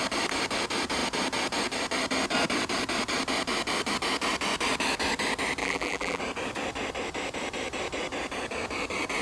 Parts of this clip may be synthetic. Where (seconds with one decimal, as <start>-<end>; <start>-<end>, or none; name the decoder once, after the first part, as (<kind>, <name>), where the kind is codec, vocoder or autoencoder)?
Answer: 5.6-6.2 (vocoder, BigVGAN v2)